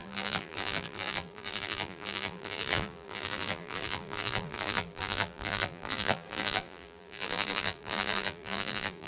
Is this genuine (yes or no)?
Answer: no